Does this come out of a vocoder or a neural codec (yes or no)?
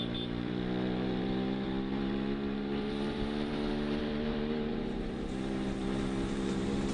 yes